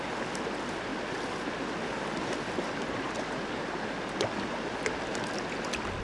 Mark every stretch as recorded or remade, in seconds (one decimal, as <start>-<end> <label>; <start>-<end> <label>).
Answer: 0.0-6.0 recorded